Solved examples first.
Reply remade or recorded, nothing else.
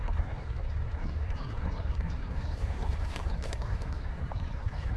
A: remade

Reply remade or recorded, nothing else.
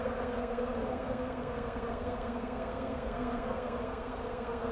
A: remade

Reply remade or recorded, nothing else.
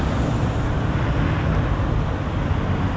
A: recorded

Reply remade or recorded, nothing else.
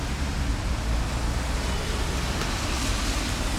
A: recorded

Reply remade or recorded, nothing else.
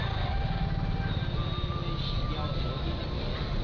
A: recorded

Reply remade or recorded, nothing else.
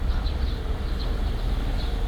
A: remade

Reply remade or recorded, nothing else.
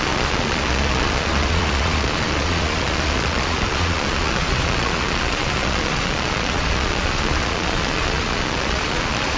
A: remade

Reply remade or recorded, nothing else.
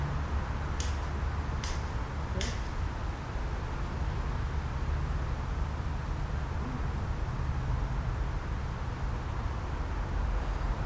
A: recorded